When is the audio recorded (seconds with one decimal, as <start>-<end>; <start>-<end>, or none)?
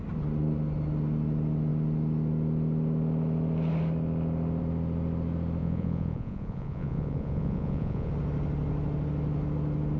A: 0.0-5.6; 8.1-10.0